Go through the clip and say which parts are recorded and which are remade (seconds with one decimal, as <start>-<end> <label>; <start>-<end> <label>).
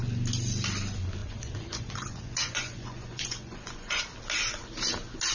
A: 0.0-1.2 recorded; 1.2-4.0 remade; 4.0-5.3 recorded